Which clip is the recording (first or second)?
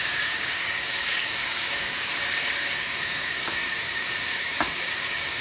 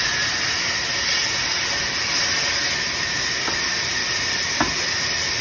second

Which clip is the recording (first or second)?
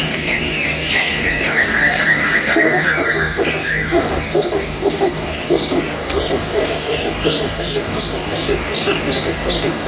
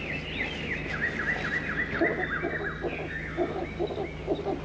second